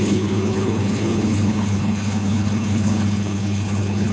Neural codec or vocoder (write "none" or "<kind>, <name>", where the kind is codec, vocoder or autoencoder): codec, HILCodec